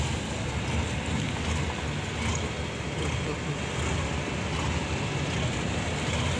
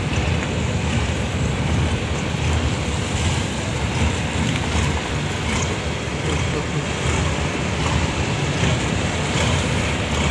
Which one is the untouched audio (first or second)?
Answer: first